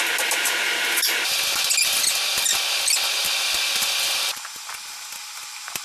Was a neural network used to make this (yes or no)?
no